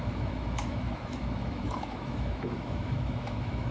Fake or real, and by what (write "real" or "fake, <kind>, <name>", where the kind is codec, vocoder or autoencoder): fake, autoencoder, DAC-VAE